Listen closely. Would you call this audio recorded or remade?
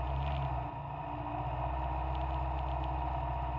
recorded